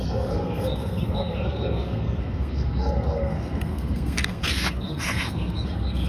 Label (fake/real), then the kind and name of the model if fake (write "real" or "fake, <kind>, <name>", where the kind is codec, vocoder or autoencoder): fake, codec, SNAC